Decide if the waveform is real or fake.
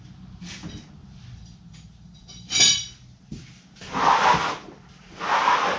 real